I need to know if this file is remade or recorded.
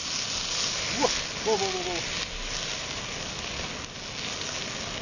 recorded